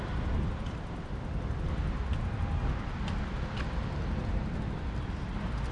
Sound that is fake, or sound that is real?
real